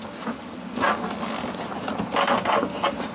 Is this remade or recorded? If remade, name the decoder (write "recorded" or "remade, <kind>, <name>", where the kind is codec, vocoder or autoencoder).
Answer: recorded